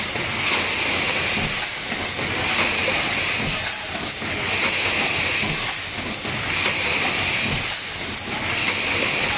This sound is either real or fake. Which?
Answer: real